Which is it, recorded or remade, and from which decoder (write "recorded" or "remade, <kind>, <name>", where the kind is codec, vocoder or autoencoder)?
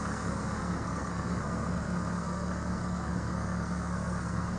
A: remade, codec, SNAC